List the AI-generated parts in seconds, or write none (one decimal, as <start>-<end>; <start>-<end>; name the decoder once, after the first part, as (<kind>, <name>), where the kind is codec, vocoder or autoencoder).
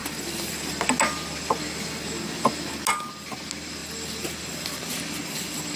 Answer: 0.0-0.7 (vocoder, BigVGAN v2); 3.8-5.8